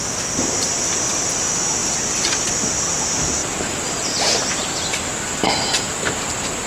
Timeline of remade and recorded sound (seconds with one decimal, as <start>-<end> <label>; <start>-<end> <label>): 0.0-1.8 recorded; 1.8-2.6 remade; 2.6-6.7 recorded